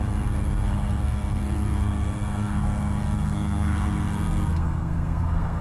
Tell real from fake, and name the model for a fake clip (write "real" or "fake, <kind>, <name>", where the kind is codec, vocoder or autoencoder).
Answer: fake, codec, SNAC